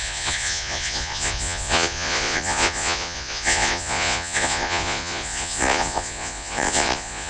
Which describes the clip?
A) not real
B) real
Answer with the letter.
A